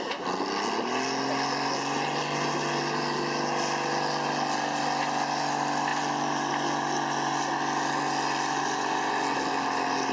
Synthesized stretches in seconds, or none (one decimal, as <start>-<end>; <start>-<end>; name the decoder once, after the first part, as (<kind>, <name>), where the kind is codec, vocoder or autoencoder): none